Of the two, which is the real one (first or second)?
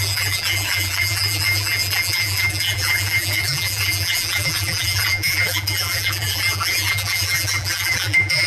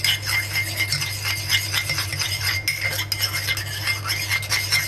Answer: second